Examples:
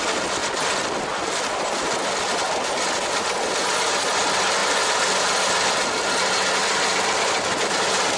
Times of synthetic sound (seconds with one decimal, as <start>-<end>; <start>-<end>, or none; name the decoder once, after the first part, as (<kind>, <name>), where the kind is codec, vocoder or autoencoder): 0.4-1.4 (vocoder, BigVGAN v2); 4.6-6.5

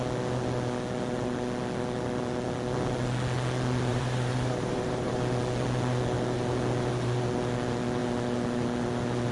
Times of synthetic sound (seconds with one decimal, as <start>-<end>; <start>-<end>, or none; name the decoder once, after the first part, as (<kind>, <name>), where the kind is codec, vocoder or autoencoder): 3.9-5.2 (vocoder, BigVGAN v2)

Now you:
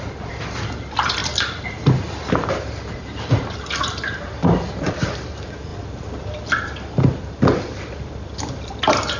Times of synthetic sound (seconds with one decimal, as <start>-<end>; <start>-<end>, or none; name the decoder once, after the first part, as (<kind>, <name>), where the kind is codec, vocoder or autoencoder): 0.0-9.2 (vocoder, BigVGAN v2)

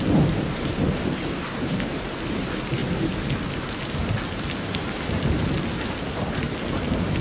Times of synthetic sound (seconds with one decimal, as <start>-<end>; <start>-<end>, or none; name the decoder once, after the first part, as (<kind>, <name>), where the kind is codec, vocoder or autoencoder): 0.0-2.8 (vocoder, BigVGAN v2)